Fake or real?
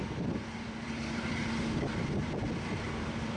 fake